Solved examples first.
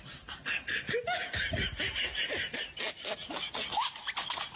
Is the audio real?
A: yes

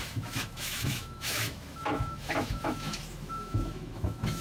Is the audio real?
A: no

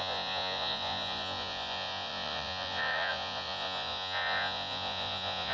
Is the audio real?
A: no